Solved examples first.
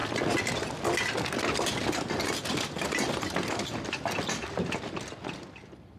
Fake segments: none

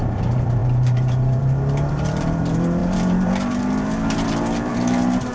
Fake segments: 0.0-5.3

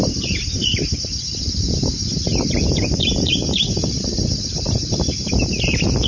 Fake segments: 0.0-6.1

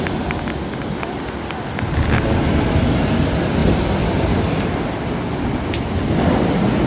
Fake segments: none

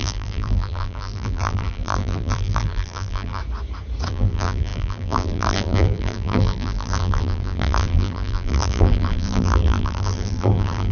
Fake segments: 0.0-3.4; 4.1-10.9

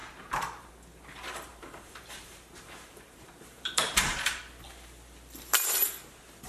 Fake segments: 0.0-0.7; 1.5-4.4

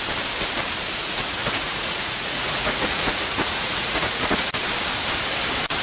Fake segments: 1.0-4.5